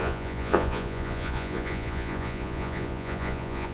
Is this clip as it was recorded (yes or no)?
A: no